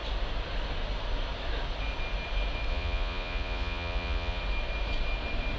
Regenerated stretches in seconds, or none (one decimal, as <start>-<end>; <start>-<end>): 2.7-4.4